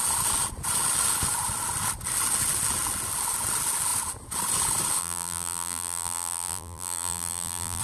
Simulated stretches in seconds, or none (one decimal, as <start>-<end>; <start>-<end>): 5.0-7.8